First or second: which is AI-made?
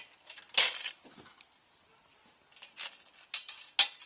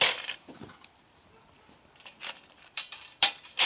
second